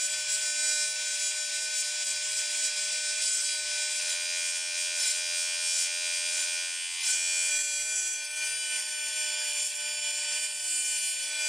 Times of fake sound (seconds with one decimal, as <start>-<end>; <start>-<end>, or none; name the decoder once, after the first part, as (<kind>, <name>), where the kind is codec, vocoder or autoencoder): 4.0-7.5 (vocoder, WaveNeXt)

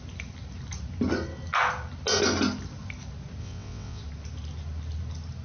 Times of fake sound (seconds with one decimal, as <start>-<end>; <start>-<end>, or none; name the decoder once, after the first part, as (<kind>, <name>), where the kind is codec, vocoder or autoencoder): 3.4-4.0 (vocoder, WaveNeXt)

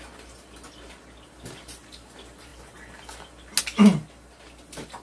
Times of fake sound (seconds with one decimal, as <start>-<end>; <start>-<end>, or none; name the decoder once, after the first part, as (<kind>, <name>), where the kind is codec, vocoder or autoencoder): none